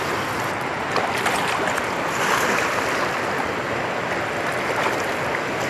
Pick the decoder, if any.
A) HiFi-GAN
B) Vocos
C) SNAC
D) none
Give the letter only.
D